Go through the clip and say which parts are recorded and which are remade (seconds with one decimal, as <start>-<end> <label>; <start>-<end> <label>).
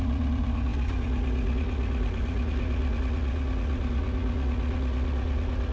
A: 0.0-5.7 remade